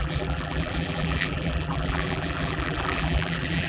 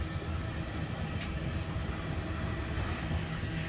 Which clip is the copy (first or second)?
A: first